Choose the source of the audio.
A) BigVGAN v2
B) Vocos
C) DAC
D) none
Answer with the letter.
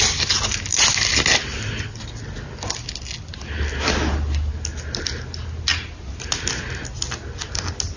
D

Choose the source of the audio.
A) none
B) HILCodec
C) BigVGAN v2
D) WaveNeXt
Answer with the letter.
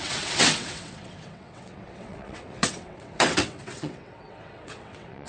D